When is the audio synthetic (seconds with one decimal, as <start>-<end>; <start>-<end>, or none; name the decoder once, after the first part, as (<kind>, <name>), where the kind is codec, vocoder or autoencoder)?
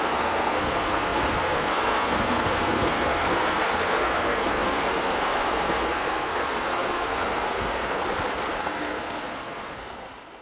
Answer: 0.0-8.0 (codec, SNAC); 8.6-10.4